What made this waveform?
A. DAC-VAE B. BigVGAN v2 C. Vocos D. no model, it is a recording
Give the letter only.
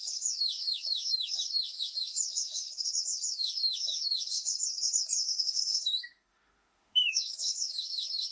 A